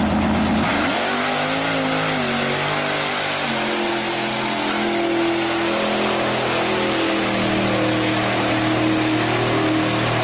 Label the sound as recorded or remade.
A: recorded